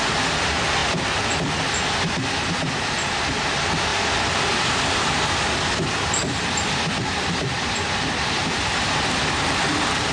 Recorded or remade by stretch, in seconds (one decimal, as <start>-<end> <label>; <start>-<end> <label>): 0.0-10.1 recorded